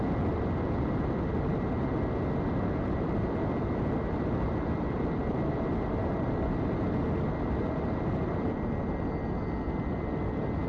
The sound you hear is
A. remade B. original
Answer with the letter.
B